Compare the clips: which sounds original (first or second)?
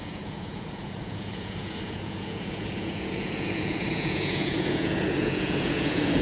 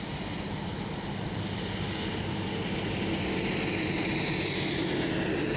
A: second